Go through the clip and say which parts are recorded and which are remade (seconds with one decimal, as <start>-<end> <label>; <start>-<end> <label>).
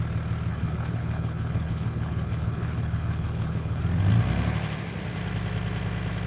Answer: 0.0-0.5 recorded; 0.5-3.8 remade; 3.8-6.3 recorded